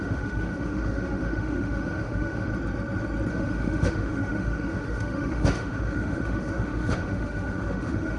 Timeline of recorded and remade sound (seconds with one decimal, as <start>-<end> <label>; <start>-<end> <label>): 0.0-2.5 remade; 2.5-3.3 recorded; 3.3-8.2 remade